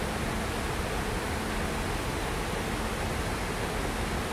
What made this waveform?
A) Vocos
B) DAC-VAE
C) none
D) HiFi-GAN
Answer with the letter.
C